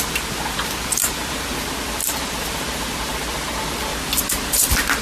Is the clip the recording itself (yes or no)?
yes